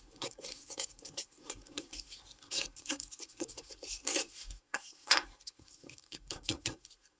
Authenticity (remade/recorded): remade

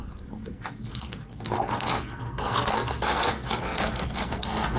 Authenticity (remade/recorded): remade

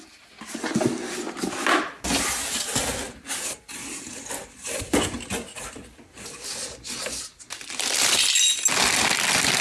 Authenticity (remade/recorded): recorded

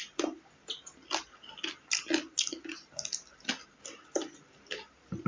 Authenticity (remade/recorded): recorded